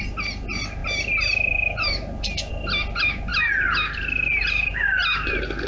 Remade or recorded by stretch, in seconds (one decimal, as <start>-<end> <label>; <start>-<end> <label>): 0.0-5.7 recorded